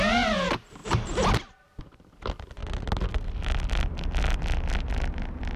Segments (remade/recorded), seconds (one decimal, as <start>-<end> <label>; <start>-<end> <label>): 0.0-5.6 recorded